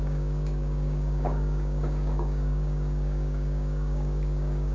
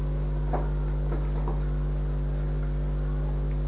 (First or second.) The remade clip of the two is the first